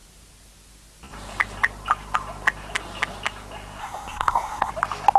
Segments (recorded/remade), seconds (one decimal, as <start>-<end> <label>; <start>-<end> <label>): 0.0-3.8 recorded; 3.8-4.7 remade; 4.7-5.2 recorded